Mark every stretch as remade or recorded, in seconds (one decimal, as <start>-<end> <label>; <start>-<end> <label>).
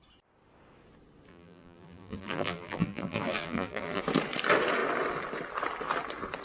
0.0-1.3 recorded; 1.3-4.0 remade; 4.0-6.4 recorded